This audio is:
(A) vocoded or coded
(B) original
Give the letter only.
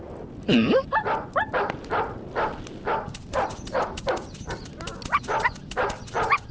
B